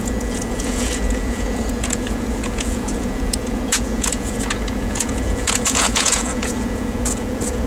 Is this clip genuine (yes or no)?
no